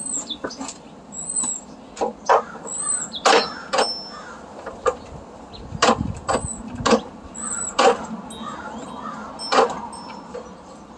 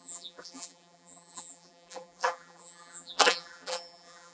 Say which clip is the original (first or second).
first